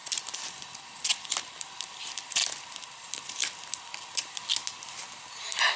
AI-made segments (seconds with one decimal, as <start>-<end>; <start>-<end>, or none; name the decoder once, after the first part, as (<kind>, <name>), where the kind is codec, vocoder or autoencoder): none